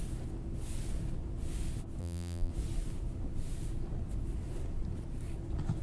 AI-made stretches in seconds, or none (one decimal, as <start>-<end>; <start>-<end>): 2.0-2.5